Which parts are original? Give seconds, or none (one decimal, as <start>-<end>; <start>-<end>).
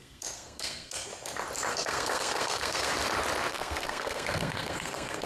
1.1-1.7; 2.9-3.5